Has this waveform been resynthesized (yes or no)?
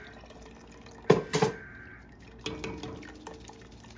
no